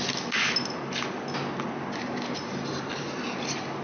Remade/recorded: recorded